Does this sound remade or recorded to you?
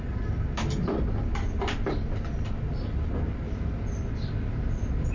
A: recorded